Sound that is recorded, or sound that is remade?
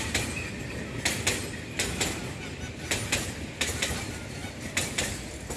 recorded